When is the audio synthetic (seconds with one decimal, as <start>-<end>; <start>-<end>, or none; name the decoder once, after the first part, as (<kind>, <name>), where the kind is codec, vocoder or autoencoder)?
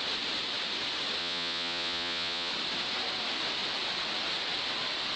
1.2-2.5 (vocoder, Vocos)